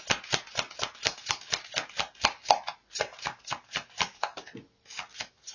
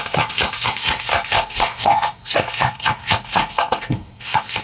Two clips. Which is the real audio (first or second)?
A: first